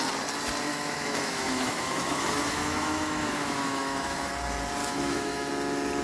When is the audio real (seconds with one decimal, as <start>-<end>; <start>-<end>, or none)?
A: 0.0-0.7; 4.3-4.8; 5.5-6.0